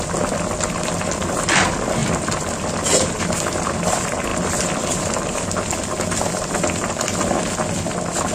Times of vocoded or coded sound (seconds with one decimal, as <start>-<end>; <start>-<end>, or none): none